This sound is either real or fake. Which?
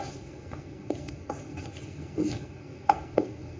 fake